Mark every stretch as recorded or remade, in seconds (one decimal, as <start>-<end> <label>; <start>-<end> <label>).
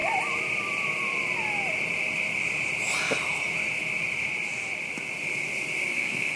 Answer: 0.0-5.9 recorded; 5.9-6.4 remade